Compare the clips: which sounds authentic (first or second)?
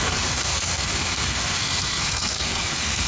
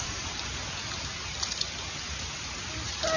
second